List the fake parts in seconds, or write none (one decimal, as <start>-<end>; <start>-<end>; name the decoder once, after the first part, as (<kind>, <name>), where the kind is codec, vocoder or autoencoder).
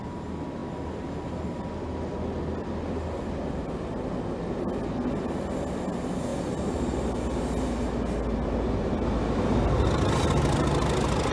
none